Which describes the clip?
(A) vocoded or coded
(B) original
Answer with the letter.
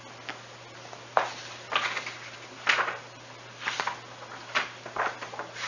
B